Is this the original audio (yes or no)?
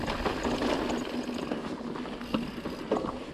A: yes